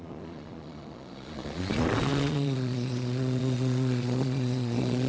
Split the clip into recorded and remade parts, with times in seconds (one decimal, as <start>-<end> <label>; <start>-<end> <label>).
0.0-5.1 remade